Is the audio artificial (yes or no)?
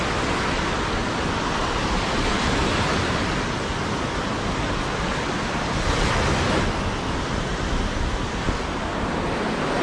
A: no